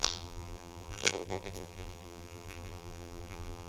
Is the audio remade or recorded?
remade